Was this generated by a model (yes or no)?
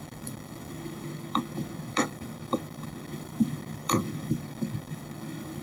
yes